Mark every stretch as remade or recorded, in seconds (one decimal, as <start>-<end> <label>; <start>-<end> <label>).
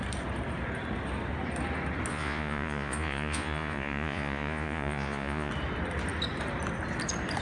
0.0-2.1 recorded; 2.1-5.5 remade; 5.5-7.4 recorded